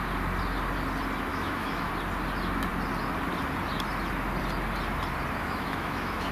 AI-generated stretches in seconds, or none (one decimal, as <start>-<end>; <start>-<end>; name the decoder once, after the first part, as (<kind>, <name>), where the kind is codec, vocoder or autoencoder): 1.3-1.9 (autoencoder, DAC-VAE); 5.4-6.3